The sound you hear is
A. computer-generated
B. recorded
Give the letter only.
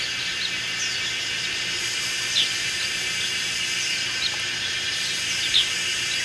B